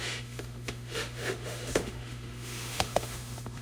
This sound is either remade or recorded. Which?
remade